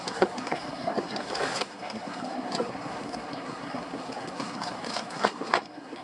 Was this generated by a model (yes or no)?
yes